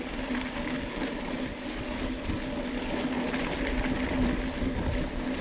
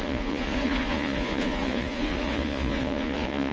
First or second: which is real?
first